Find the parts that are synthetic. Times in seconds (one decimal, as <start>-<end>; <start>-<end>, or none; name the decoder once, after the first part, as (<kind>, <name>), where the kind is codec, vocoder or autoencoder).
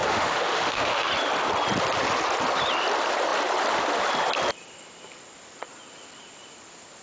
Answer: 0.0-1.1 (autoencoder, DAC-VAE)